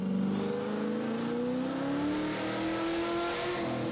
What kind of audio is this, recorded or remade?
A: recorded